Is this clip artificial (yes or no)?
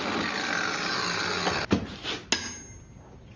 no